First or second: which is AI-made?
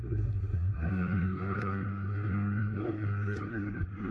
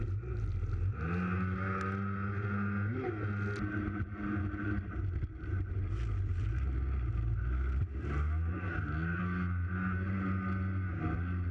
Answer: first